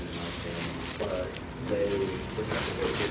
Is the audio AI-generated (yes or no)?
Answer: no